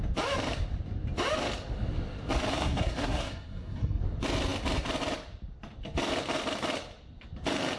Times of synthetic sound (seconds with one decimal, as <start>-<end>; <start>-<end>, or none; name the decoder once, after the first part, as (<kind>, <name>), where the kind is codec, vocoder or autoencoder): 2.5-4.0 (codec, SNAC)